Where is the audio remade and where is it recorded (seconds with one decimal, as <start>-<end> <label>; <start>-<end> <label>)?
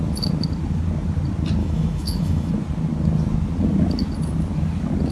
0.0-1.6 recorded; 1.6-2.5 remade; 2.5-5.1 recorded